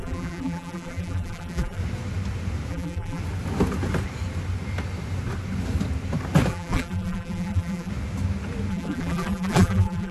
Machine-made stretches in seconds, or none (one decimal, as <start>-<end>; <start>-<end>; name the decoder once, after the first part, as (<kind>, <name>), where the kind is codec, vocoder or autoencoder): 0.0-1.8 (vocoder, BigVGAN v2); 2.7-3.2; 6.5-7.9; 8.7-10.1